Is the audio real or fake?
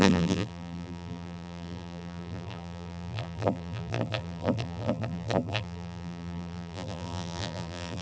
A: fake